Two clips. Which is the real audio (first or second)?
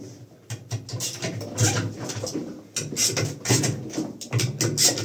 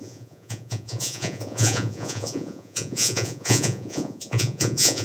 first